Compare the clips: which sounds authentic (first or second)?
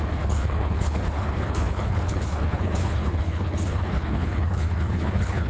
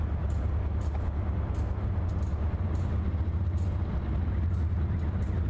second